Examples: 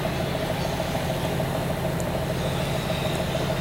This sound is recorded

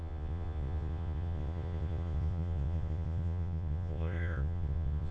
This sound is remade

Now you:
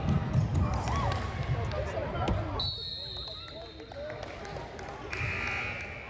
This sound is recorded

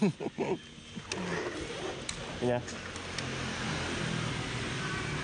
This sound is recorded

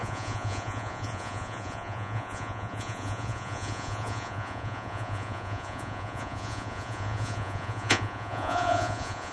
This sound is remade